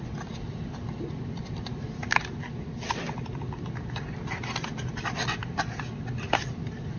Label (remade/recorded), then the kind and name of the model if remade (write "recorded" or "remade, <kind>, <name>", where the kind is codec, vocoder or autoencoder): recorded